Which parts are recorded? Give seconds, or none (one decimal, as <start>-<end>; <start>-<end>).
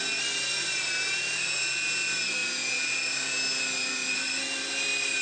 0.0-5.2